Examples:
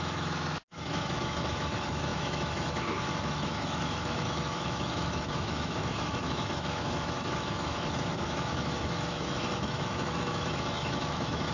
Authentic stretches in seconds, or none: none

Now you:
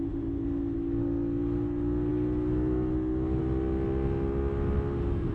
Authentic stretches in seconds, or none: 0.0-5.3

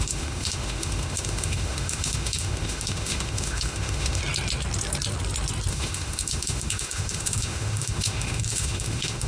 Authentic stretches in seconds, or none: 4.2-5.7

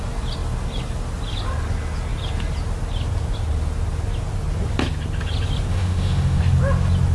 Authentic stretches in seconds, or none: 0.0-5.7; 6.4-7.1

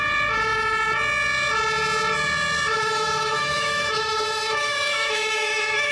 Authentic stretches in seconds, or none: 0.0-2.7

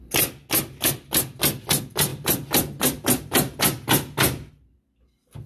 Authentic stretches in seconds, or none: 0.0-5.5

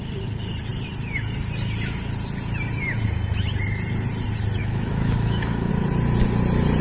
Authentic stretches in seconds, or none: 0.0-4.6; 5.7-6.8